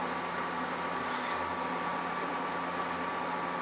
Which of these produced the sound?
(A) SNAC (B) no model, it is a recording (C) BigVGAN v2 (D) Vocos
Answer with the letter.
B